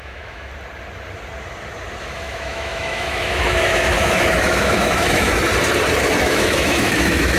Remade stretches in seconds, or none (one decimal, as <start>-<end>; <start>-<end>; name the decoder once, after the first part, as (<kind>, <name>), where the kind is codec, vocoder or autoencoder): 0.0-0.5 (autoencoder, DAC-VAE); 2.0-5.3; 6.2-7.4